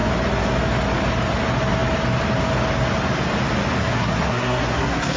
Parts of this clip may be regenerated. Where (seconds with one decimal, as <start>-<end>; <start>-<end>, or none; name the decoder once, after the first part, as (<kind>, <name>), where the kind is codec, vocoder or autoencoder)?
3.8-5.2 (codec, SNAC)